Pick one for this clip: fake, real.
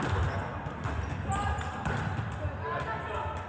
real